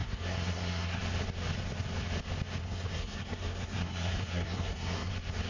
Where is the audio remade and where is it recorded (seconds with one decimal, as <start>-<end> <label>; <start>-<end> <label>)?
0.0-1.0 remade; 1.0-2.6 recorded; 2.6-5.1 remade; 5.1-5.5 recorded